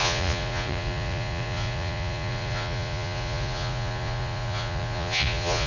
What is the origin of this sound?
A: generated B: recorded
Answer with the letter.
A